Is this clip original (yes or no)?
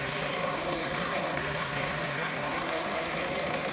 no